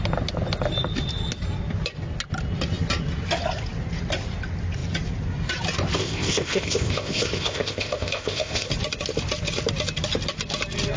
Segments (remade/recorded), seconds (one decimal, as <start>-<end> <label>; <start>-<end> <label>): 0.0-6.0 recorded; 6.0-8.7 remade; 8.7-11.0 recorded